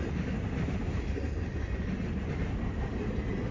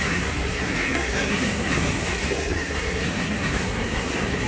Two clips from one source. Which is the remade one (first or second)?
second